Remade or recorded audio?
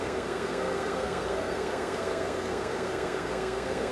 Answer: remade